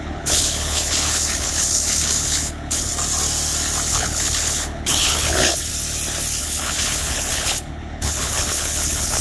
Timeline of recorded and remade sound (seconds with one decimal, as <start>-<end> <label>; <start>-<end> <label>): 0.0-2.9 remade; 2.9-3.9 recorded; 3.9-5.7 remade; 5.7-6.4 recorded; 6.4-9.2 remade